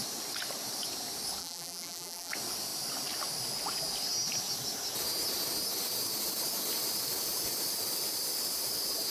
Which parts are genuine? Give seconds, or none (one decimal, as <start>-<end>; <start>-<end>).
0.0-1.4; 2.3-9.1